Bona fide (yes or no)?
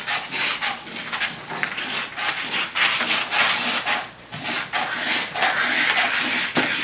yes